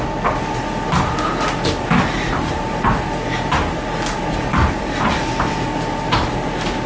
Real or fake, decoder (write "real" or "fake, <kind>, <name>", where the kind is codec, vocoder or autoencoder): real